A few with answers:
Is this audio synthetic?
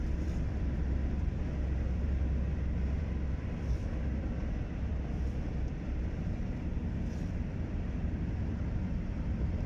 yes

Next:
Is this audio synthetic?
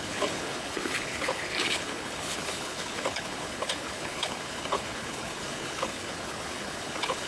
yes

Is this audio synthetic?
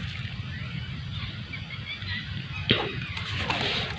no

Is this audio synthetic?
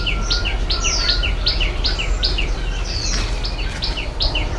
yes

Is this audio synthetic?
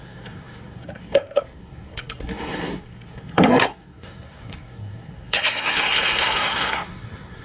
yes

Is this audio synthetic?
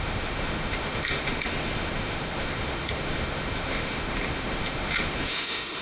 yes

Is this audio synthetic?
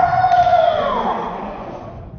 yes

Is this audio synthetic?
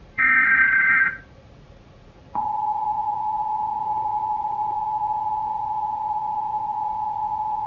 yes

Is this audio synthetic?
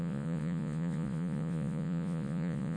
yes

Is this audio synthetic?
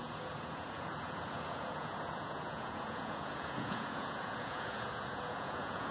yes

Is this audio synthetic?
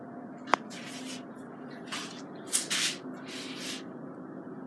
no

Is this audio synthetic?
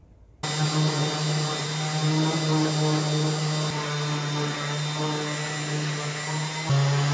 no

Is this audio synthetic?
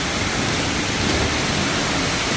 no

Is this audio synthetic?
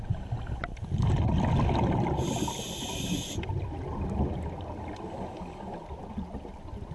no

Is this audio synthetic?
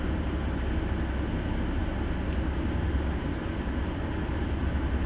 no